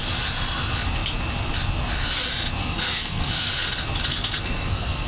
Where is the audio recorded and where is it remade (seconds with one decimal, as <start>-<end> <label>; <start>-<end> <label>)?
0.0-2.6 recorded; 2.6-3.5 remade; 3.5-4.1 recorded; 4.1-5.1 remade